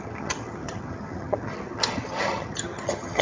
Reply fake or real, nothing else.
fake